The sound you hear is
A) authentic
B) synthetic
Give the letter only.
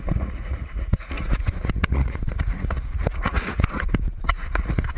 B